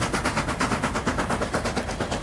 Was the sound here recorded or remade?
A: recorded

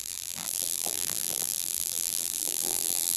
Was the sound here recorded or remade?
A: remade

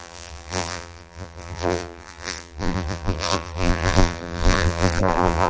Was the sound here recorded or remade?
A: remade